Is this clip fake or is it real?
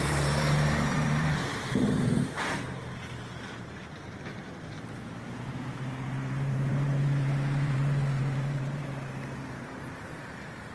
fake